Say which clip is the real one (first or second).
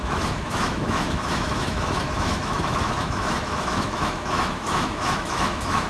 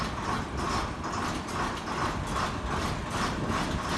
second